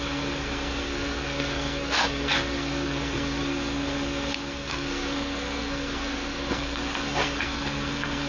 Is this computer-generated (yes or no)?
yes